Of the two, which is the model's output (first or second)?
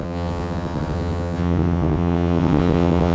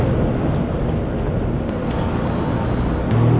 first